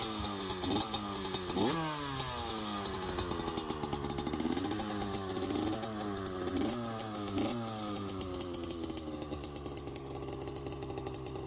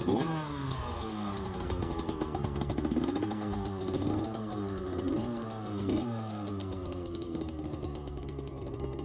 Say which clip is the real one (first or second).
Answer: first